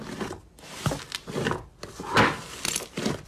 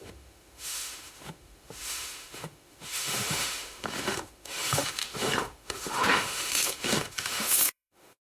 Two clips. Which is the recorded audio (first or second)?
first